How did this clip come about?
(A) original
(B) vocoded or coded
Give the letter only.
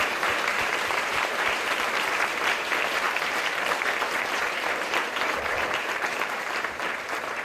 B